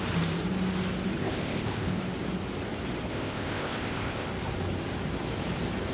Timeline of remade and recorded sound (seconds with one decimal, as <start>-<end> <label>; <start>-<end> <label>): 0.0-1.2 recorded; 1.2-2.0 remade; 2.0-3.1 recorded; 3.1-4.3 remade; 4.3-5.9 recorded